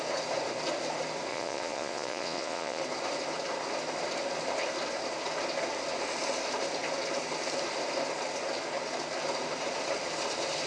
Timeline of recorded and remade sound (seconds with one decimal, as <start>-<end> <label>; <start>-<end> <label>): 0.0-1.3 recorded; 1.3-2.8 remade; 2.8-10.7 recorded